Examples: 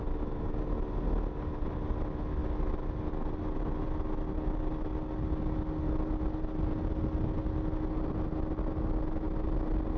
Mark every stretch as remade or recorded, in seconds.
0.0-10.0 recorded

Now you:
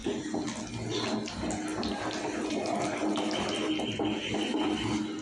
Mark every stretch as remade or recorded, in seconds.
0.0-5.2 recorded

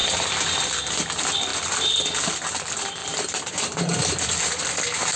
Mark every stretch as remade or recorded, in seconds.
0.0-5.2 remade

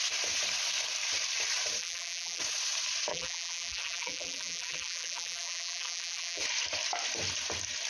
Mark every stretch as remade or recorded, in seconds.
0.0-1.8 recorded; 1.8-2.4 remade; 2.4-3.1 recorded; 3.1-6.4 remade; 6.4-7.9 recorded